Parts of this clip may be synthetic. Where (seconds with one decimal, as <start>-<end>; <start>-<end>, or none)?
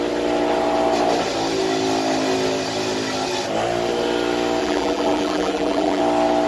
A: 4.6-6.0